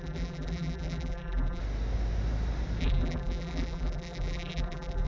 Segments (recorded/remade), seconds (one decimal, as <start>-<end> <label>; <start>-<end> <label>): 0.0-1.6 remade; 1.6-2.8 recorded; 2.8-5.1 remade